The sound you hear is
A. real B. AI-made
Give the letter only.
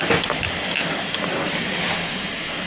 A